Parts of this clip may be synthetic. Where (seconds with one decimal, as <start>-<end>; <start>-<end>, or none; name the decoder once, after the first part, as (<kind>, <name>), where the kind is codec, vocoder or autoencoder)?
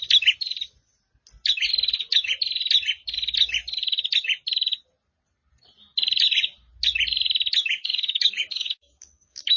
7.6-9.6 (codec, DAC)